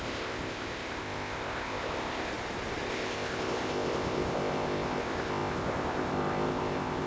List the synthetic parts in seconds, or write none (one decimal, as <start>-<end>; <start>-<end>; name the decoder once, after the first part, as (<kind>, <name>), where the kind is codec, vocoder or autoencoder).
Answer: 0.0-2.3 (codec, ZipCodec); 2.9-7.1